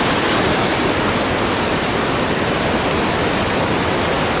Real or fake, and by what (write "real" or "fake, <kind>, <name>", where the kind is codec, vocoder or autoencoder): real